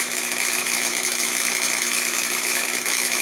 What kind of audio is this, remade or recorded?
remade